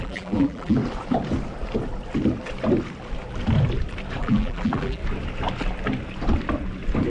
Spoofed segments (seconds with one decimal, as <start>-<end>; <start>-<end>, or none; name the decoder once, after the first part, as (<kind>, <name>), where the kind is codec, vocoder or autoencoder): 0.0-0.8 (vocoder, BigVGAN v2); 4.2-5.0